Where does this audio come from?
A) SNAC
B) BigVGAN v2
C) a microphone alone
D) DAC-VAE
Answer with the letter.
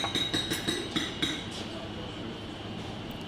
B